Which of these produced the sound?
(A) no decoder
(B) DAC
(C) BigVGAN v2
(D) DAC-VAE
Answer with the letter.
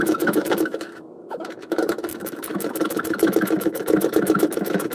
D